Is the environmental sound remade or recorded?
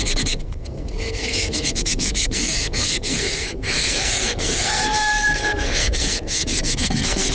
remade